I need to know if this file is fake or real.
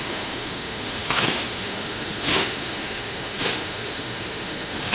fake